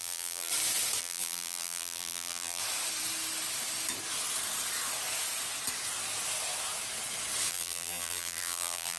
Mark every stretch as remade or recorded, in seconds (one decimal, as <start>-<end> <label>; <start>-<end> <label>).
0.0-0.5 remade; 0.5-1.0 recorded; 1.0-2.6 remade; 2.6-7.5 recorded; 7.5-9.0 remade